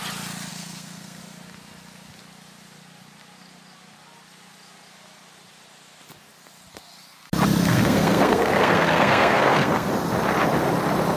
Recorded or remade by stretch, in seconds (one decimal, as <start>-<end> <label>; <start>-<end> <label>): 0.0-0.5 recorded; 0.5-1.2 remade; 1.2-7.6 recorded; 7.6-9.9 remade; 9.9-11.2 recorded